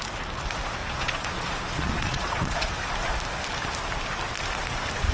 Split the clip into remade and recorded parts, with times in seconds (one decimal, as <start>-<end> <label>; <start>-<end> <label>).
0.0-0.8 recorded; 0.8-2.7 remade; 2.7-5.1 recorded